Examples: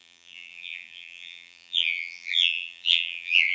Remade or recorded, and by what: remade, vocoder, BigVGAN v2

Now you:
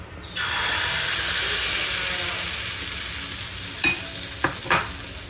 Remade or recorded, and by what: recorded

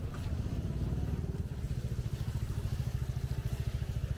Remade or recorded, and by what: remade, vocoder, BigVGAN v2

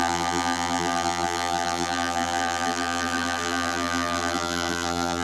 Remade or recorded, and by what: remade, vocoder, BigVGAN v2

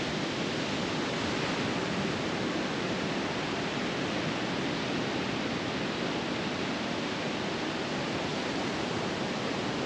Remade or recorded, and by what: recorded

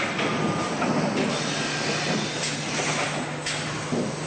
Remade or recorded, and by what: recorded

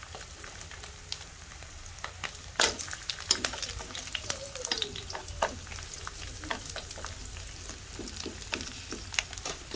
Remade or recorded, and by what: recorded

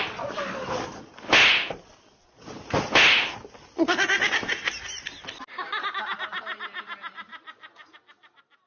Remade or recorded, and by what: recorded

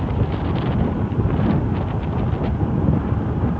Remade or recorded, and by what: remade, vocoder, BigVGAN v2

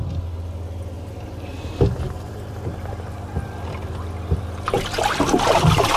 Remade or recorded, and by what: recorded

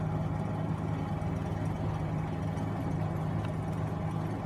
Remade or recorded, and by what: recorded